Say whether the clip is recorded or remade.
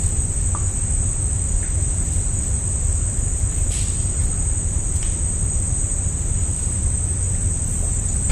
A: recorded